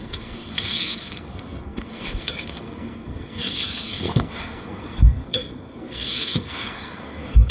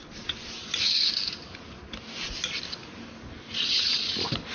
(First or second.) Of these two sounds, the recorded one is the second